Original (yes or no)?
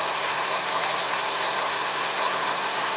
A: no